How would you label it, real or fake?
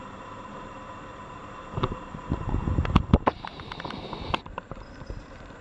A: fake